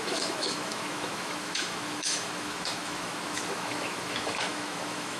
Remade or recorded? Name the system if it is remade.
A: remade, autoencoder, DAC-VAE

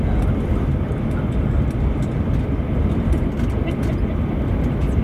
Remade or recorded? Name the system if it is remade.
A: recorded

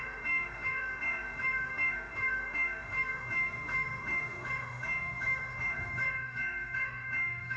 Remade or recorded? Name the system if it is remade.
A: remade, autoencoder, DAC-VAE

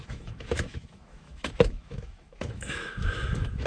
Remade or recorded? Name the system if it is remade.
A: remade, autoencoder, DAC-VAE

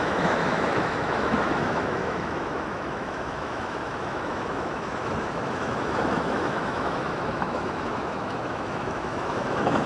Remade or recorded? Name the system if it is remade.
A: remade, autoencoder, DAC-VAE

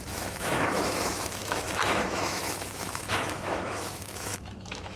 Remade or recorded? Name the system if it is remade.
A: remade, autoencoder, DAC-VAE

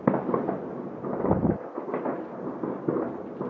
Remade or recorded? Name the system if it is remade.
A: recorded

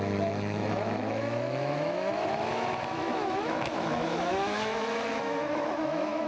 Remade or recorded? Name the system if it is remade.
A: remade, autoencoder, DAC-VAE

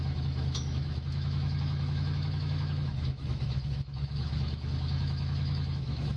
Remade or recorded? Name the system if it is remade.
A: remade, autoencoder, DAC-VAE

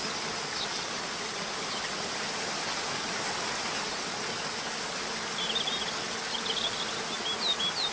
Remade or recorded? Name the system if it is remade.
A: recorded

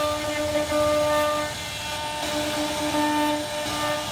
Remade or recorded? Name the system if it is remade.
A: recorded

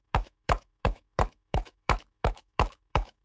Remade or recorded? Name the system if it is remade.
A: remade, autoencoder, DAC-VAE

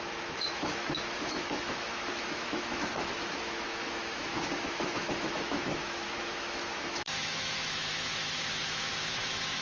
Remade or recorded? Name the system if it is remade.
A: remade, autoencoder, DAC-VAE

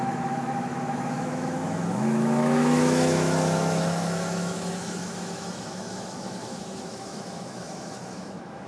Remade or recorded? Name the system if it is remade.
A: remade, autoencoder, DAC-VAE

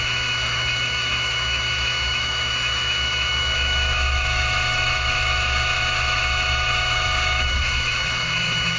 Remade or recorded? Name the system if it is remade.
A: remade, autoencoder, DAC-VAE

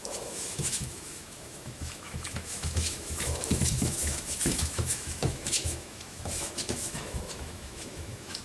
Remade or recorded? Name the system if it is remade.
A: remade, autoencoder, DAC-VAE